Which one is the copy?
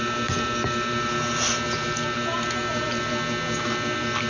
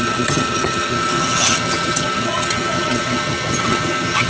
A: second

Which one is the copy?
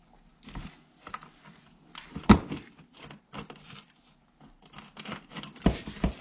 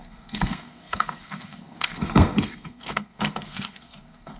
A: second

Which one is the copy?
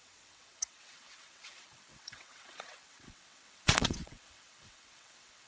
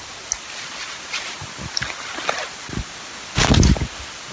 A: first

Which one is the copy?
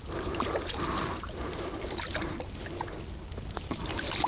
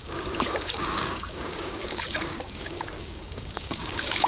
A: second